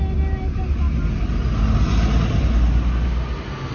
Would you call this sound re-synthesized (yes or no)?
no